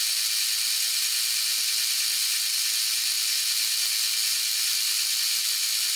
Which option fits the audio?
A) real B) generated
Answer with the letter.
A